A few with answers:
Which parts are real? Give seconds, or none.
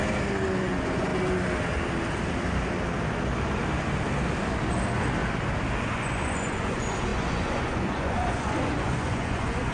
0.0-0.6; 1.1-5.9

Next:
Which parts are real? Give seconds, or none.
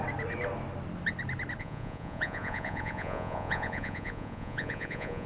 0.0-1.6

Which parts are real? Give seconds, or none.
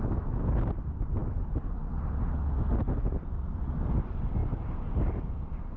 0.0-5.8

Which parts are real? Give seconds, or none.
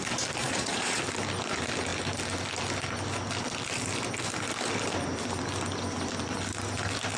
0.0-0.4; 1.0-7.2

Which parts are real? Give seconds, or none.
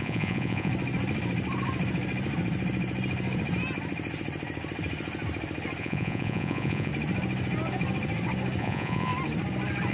0.7-5.8; 6.9-8.6; 9.1-9.9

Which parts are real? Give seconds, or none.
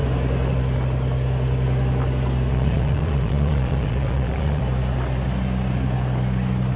0.0-2.5; 4.6-6.8